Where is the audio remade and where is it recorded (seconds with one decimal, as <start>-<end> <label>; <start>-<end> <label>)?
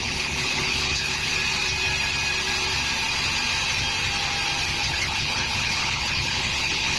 0.0-1.3 remade; 1.3-4.8 recorded; 4.8-7.0 remade